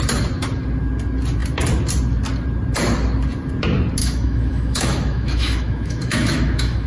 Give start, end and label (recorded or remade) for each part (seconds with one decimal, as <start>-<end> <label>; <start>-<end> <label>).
0.0-4.0 recorded; 4.0-6.9 remade